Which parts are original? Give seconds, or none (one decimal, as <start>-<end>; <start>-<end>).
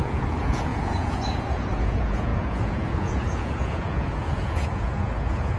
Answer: none